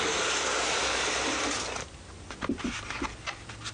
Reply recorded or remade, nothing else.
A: recorded